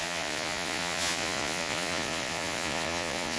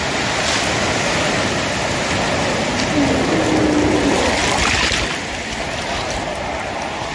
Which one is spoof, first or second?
first